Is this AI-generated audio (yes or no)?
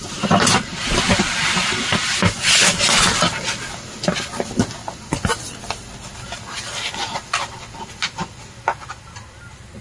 no